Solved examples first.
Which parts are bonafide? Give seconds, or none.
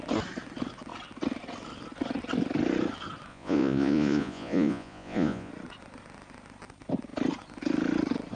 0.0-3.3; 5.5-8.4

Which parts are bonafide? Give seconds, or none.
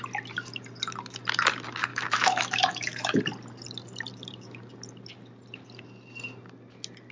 0.0-1.9; 3.2-7.1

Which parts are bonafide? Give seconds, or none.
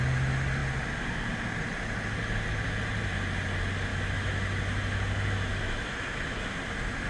0.0-3.9; 6.5-7.1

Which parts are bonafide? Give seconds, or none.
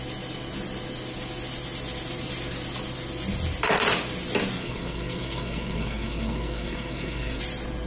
0.0-4.6; 7.4-7.9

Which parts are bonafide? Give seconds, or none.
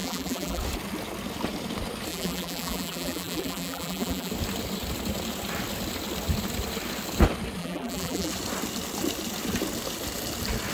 0.6-2.1; 4.3-7.6; 8.3-10.7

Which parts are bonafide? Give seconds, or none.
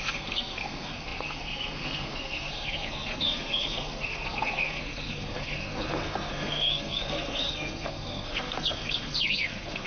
none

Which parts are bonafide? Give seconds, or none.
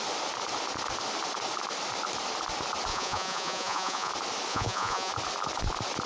0.0-2.9; 4.1-4.5; 5.1-6.1